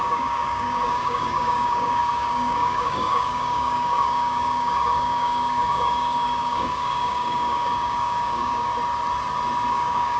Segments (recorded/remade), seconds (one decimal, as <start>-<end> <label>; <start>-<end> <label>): 0.0-8.7 remade; 8.7-9.7 recorded; 9.7-10.2 remade

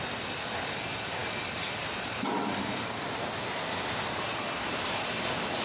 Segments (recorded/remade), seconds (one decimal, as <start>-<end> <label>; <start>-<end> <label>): 0.0-5.6 recorded

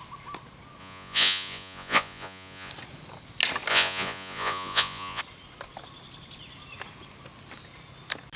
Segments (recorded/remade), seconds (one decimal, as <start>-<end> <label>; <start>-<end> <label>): 0.0-0.8 recorded; 0.8-2.7 remade; 2.7-3.7 recorded; 3.7-5.2 remade; 5.2-8.4 recorded

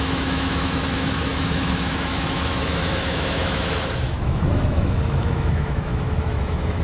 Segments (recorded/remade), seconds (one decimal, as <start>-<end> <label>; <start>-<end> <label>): 0.0-6.8 remade

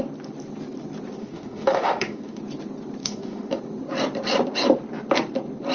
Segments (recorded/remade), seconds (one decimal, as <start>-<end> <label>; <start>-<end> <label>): 0.0-1.2 recorded; 1.2-2.4 remade; 2.4-3.0 recorded; 3.0-3.6 remade; 3.6-5.7 recorded

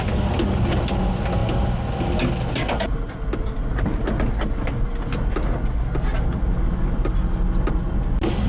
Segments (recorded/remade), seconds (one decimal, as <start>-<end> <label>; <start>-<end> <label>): 0.0-8.5 recorded